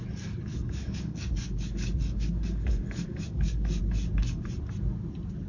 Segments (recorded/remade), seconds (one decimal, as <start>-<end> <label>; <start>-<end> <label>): 0.0-0.5 recorded; 0.5-3.8 remade; 3.8-5.5 recorded